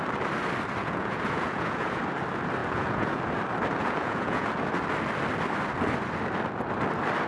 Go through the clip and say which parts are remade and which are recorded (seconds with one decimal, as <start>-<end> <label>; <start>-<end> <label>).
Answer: 0.0-0.8 recorded; 0.8-2.0 remade; 2.0-2.6 recorded; 2.6-3.2 remade; 3.2-3.8 recorded; 3.8-4.5 remade; 4.5-7.3 recorded